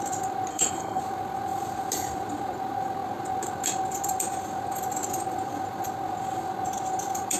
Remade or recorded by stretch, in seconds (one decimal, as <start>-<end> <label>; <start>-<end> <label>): 0.0-0.5 recorded; 0.5-1.0 remade; 1.0-7.4 recorded